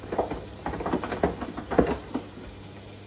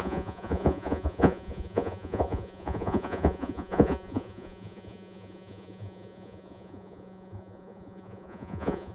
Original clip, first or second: first